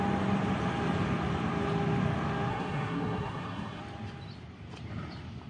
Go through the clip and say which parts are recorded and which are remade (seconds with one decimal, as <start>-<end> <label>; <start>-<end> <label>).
0.0-2.5 recorded; 2.5-3.8 remade; 3.8-5.5 recorded